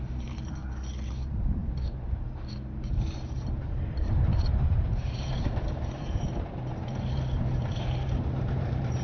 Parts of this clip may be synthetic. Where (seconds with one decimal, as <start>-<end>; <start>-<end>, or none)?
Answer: 0.0-0.6; 1.1-9.0